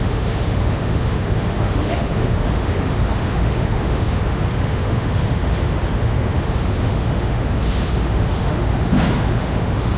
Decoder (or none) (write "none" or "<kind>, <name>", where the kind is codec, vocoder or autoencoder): autoencoder, DAC-VAE